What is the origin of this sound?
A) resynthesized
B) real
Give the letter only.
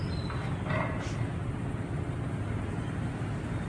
B